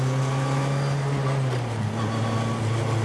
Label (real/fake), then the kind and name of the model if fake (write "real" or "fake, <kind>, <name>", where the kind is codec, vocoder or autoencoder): real